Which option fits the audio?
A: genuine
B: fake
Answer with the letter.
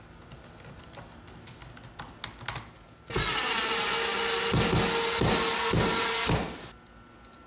A